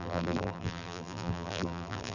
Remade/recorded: remade